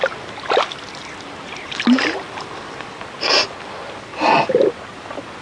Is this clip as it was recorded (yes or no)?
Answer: yes